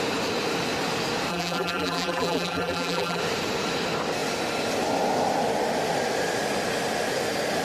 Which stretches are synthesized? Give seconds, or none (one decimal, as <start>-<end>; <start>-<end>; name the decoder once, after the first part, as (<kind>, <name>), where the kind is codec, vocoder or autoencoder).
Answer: 1.3-3.2 (vocoder, BigVGAN v2)